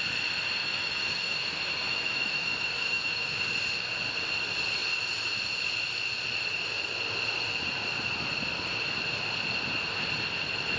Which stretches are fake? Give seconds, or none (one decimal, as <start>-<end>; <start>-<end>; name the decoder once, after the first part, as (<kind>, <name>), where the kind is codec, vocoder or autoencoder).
0.6-3.4 (autoencoder, DAC-VAE)